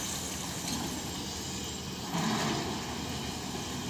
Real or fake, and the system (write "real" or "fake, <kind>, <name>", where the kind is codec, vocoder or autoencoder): real